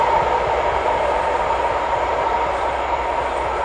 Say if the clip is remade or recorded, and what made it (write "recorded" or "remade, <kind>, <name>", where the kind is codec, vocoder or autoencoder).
recorded